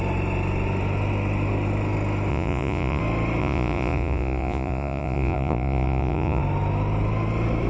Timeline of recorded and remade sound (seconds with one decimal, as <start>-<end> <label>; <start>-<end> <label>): 0.0-2.3 recorded; 2.3-3.0 remade; 3.0-3.4 recorded; 3.4-6.4 remade; 6.4-7.7 recorded